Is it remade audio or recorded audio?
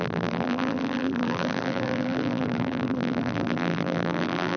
remade